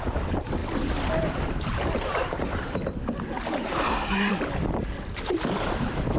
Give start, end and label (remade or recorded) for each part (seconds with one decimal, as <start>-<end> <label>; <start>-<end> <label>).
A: 0.0-6.2 recorded